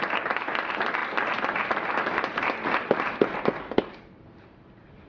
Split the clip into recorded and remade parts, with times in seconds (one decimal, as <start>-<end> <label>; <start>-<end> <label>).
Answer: 0.0-5.1 recorded